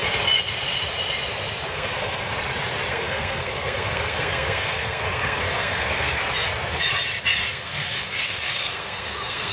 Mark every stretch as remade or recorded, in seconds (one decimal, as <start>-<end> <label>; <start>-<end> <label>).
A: 0.0-1.7 recorded; 1.7-2.3 remade; 2.3-2.9 recorded; 2.9-6.2 remade; 6.2-7.2 recorded; 7.2-9.5 remade